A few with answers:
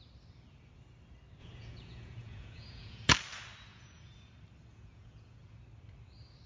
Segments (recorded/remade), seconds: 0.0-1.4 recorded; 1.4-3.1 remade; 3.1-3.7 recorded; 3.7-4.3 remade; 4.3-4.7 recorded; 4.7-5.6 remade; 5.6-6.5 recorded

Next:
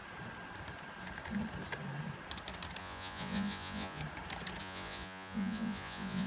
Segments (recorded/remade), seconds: 0.0-2.8 recorded; 2.8-4.0 remade; 4.0-4.6 recorded; 4.6-6.3 remade

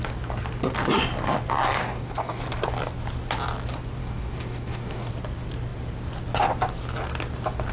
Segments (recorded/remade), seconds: 0.0-1.8 recorded; 1.8-2.4 remade; 2.4-4.0 recorded; 4.0-5.1 remade; 5.1-7.7 recorded

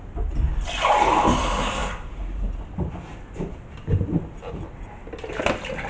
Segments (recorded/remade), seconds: 0.0-5.9 recorded

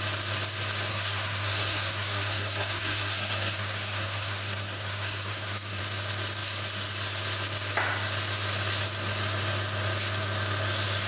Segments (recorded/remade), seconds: 0.0-0.9 recorded; 0.9-5.8 remade; 5.8-11.1 recorded

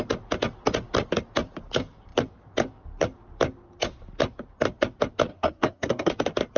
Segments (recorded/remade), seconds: 0.0-5.3 recorded; 5.3-6.1 remade; 6.1-6.6 recorded

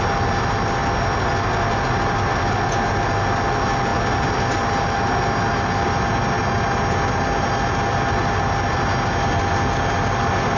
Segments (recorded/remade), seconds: 0.0-10.6 recorded

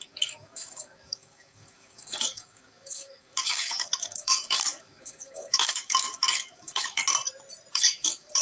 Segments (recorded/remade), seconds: 0.0-7.0 remade; 7.0-7.7 recorded; 7.7-8.4 remade